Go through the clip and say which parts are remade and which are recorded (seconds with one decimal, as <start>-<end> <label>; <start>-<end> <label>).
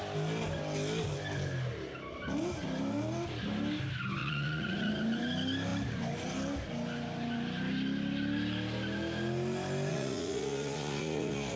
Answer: 0.0-4.2 recorded; 4.2-4.9 remade; 4.9-9.9 recorded; 9.9-11.6 remade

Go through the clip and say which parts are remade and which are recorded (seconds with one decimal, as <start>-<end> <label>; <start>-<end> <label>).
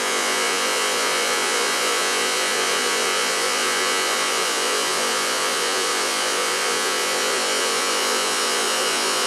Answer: 0.0-9.3 remade